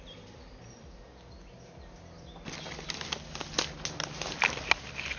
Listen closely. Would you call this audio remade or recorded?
recorded